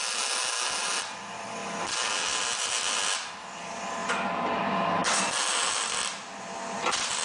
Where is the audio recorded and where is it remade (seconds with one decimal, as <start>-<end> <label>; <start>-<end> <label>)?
0.0-7.2 recorded